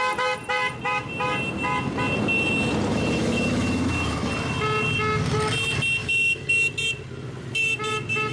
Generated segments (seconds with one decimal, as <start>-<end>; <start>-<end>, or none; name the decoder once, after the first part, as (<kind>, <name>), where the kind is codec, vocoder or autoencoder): 2.9-4.3 (autoencoder, DAC-VAE); 6.0-6.5